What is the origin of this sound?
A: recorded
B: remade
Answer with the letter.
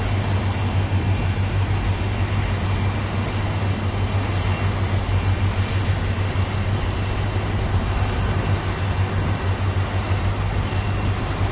A